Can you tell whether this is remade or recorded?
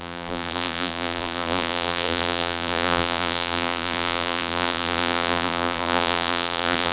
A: remade